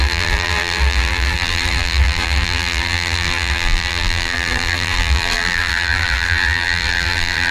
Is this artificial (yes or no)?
yes